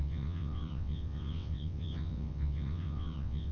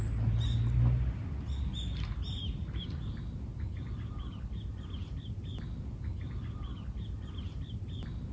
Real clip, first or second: second